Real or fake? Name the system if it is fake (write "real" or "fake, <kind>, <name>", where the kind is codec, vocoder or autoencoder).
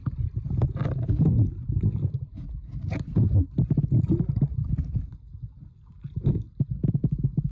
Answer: real